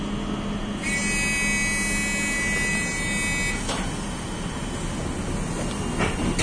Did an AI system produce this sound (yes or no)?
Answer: no